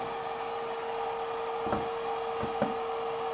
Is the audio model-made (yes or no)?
no